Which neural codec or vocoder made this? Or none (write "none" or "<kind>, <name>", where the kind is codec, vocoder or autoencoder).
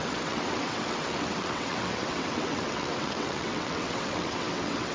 vocoder, WaveNeXt